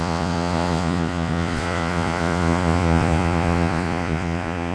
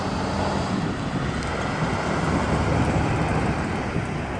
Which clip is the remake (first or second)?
first